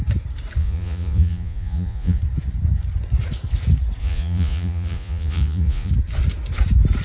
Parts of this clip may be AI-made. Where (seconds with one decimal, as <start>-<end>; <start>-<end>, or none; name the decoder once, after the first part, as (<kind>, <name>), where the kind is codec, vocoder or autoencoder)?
0.6-2.2 (vocoder, Vocos); 4.0-5.9